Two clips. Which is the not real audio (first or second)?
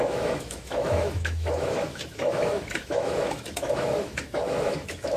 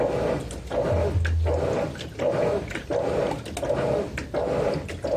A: first